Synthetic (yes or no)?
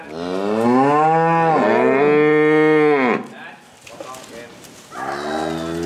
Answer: no